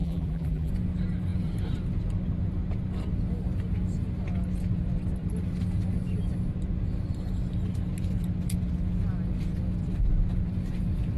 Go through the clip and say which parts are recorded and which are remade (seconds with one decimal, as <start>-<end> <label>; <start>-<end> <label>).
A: 0.0-0.7 remade; 0.7-11.2 recorded